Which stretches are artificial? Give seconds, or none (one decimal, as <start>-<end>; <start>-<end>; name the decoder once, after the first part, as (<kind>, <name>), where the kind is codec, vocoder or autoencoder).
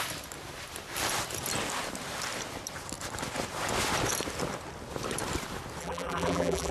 5.8-6.7 (vocoder, BigVGAN v2)